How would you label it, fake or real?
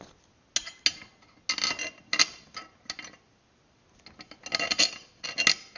real